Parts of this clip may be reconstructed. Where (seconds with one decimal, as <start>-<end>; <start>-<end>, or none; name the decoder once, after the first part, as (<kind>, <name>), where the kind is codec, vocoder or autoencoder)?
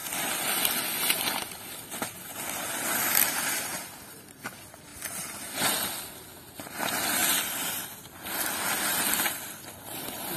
none